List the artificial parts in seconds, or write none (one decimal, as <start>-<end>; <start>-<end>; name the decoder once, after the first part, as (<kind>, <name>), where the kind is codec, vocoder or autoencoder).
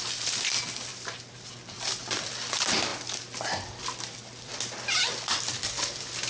0.9-1.5 (vocoder, BigVGAN v2)